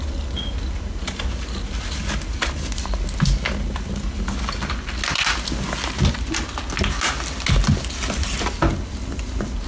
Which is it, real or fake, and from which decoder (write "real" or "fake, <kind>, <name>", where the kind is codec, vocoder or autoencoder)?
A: real